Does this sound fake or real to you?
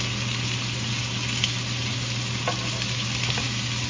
real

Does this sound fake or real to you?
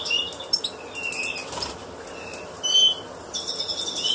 real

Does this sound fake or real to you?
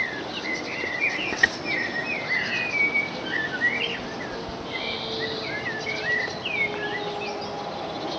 real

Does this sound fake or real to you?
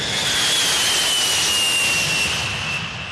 real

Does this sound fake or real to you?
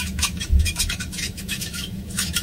fake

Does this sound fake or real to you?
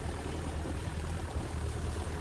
fake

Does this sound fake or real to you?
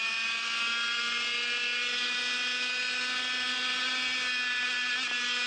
real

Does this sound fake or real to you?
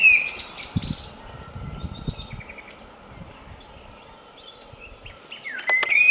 real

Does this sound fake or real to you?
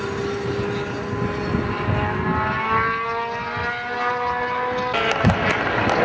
real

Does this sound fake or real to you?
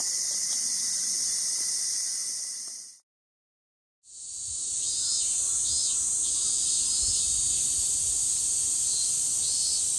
real